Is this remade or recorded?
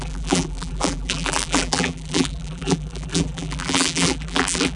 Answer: remade